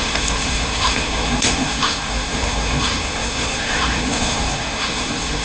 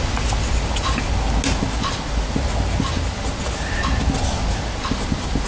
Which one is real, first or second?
second